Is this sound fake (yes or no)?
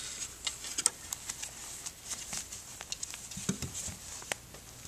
no